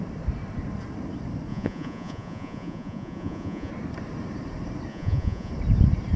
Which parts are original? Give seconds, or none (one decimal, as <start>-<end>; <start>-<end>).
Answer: 0.0-1.5; 3.7-4.9; 5.5-6.2